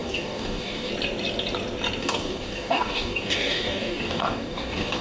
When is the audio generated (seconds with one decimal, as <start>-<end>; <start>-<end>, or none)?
0.0-0.9; 2.0-5.0

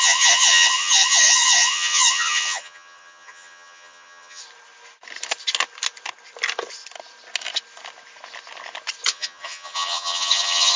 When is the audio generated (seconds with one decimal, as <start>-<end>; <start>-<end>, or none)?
0.0-4.4; 9.1-10.8

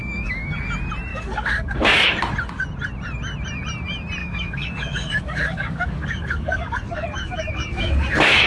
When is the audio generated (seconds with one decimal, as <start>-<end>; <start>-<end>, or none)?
0.0-0.5; 1.1-2.1; 4.2-8.5

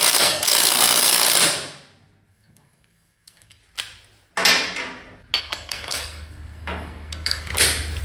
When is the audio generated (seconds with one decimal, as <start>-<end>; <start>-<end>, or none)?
0.0-1.2; 2.3-3.6; 5.4-7.5

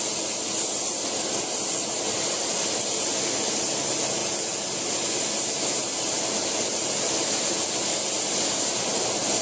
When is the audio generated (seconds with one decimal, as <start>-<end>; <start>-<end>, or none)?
none

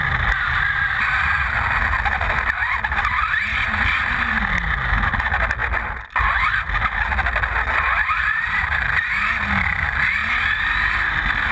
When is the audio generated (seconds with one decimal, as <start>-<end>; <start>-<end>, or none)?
3.5-4.4; 10.2-10.9